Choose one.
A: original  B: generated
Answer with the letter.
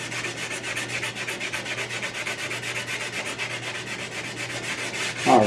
A